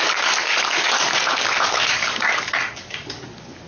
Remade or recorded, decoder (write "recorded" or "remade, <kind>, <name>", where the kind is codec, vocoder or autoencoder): remade, codec, DAC